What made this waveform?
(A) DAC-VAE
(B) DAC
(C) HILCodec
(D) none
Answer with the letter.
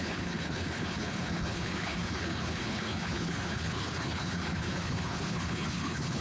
C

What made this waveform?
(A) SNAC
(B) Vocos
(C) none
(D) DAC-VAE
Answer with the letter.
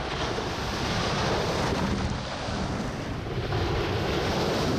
C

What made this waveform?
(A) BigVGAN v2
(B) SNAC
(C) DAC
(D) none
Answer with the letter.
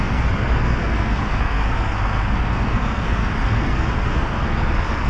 B